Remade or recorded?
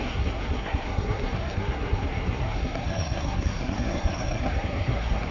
remade